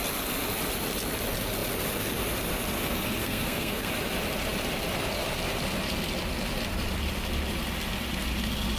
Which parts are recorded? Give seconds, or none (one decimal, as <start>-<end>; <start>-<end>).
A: 0.0-3.2; 3.9-8.8